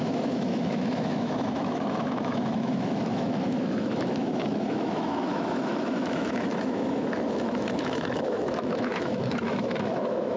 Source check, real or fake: fake